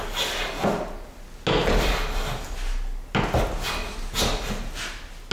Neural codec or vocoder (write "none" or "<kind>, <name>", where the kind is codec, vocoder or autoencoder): none